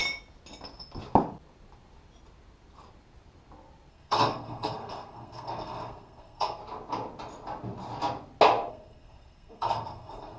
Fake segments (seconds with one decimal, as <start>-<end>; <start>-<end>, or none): 3.9-6.6; 8.7-10.4